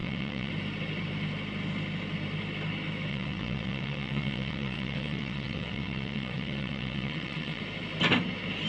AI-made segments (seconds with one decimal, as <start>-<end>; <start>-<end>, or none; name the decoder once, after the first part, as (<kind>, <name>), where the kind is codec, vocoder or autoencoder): 0.0-0.5 (vocoder, WaveNeXt); 3.1-7.6